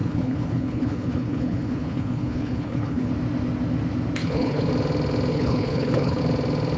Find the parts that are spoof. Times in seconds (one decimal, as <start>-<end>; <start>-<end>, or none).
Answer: 0.0-3.1; 4.2-4.7; 5.3-6.2